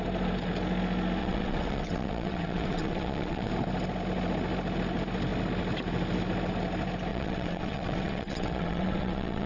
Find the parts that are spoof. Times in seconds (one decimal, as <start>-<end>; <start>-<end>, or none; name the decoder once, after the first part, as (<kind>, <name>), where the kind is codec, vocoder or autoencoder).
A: 1.2-3.5 (vocoder, WaveNeXt); 7.1-9.5